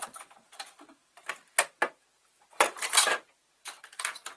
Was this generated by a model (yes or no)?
yes